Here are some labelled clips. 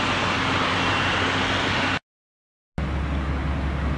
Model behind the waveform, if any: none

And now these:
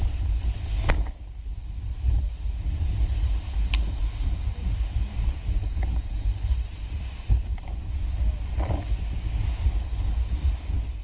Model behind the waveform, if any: none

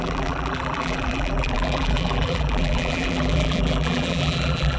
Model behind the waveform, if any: vocoder, BigVGAN v2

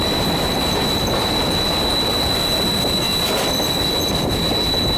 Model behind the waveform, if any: none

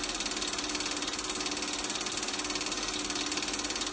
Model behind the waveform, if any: none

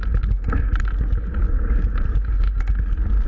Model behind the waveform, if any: none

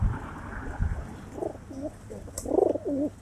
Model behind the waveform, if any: none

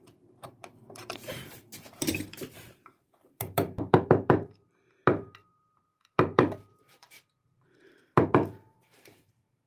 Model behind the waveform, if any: vocoder, BigVGAN v2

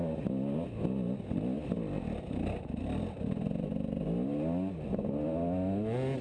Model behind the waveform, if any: none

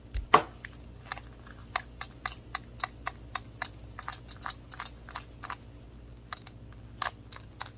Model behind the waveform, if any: none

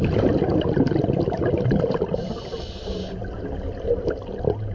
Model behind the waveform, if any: none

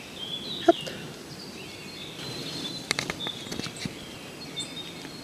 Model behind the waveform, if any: none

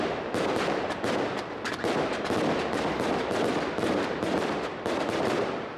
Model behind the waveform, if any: none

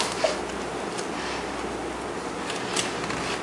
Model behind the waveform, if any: none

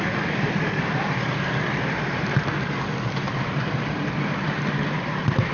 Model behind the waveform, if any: vocoder, BigVGAN v2